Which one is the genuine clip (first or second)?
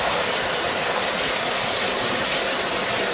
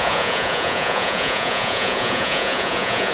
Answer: first